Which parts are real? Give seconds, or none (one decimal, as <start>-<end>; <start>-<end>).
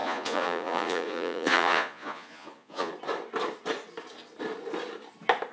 2.9-5.5